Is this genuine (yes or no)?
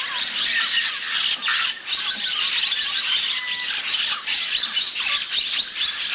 yes